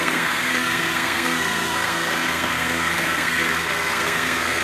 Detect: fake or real fake